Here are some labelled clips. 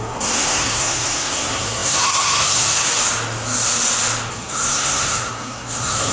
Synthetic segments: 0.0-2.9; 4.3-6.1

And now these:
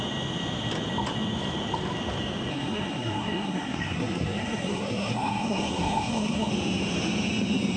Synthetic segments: 2.5-6.5

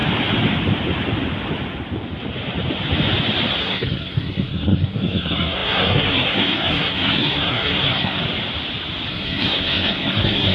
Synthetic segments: 3.6-8.2; 9.1-10.5

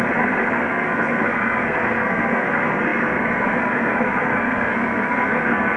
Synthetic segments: 0.0-5.8

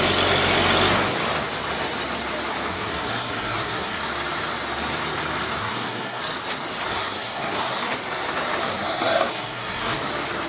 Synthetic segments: 2.7-4.0; 5.6-6.2; 6.9-7.9; 8.6-10.0

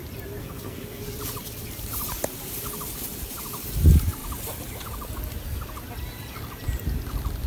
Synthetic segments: 0.4-1.0

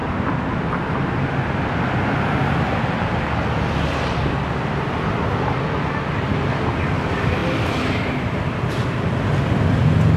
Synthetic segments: none